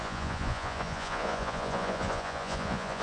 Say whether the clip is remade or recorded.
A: remade